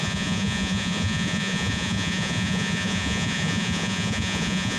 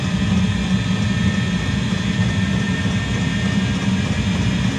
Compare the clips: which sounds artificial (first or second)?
first